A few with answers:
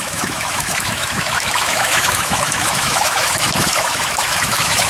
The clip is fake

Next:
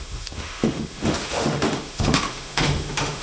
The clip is fake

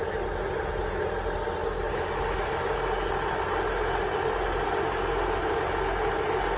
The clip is real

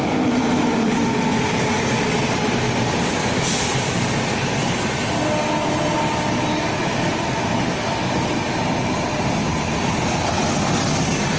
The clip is real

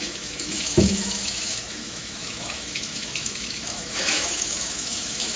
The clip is fake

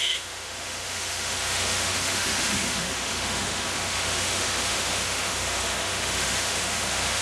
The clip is fake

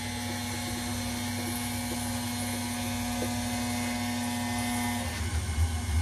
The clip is real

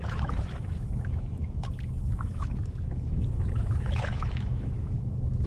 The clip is fake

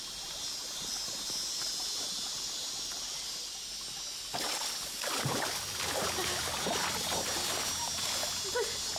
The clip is real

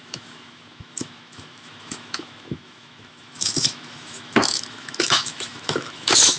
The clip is fake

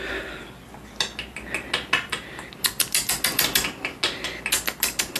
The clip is real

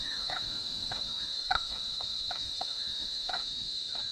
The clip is fake